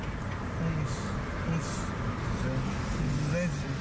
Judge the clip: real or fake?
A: real